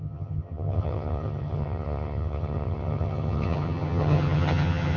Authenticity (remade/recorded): remade